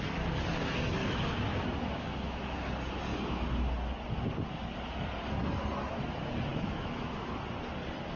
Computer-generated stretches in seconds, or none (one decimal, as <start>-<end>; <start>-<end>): 1.0-2.7; 6.5-7.3